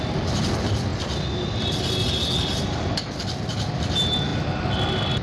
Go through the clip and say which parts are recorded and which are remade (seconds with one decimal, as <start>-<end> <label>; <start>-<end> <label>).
0.0-5.2 recorded